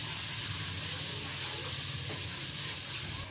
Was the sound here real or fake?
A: real